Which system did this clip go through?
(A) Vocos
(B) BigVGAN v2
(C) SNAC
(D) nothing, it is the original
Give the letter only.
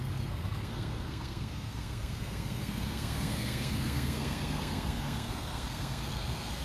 C